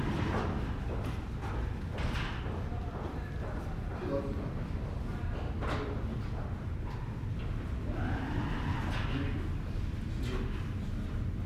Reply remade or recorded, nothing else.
recorded